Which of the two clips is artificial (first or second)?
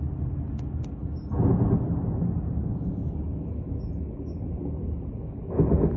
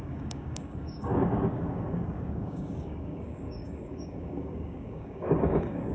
second